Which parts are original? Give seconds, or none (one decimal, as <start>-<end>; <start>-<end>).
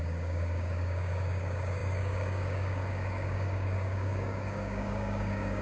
none